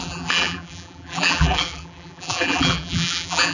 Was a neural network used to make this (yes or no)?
yes